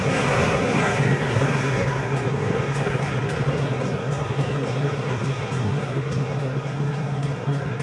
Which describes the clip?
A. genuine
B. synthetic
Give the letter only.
B